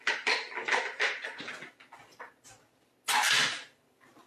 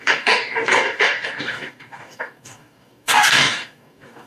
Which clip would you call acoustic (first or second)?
first